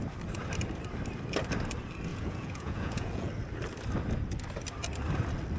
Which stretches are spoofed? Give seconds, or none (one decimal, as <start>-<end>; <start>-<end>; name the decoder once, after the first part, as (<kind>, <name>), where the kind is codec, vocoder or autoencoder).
2.1-3.3 (vocoder, Vocos)